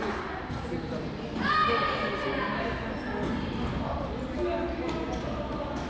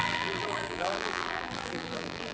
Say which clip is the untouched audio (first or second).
first